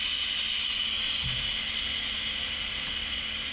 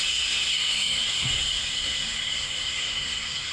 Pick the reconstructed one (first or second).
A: second